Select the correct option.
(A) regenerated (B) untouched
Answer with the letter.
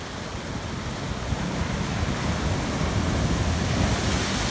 B